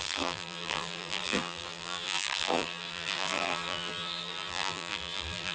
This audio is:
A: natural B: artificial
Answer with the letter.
B